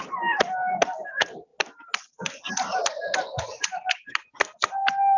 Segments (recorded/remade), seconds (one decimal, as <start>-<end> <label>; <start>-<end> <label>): 0.0-5.2 recorded